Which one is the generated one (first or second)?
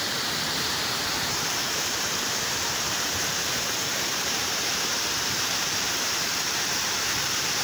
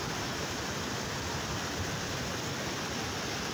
first